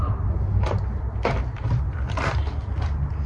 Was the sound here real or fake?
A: real